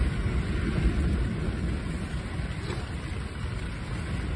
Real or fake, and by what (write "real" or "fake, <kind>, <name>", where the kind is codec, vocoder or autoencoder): real